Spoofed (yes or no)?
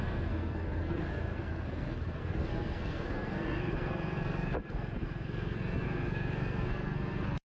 yes